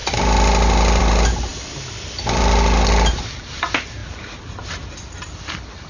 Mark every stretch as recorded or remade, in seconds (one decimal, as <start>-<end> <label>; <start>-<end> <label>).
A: 0.0-5.9 recorded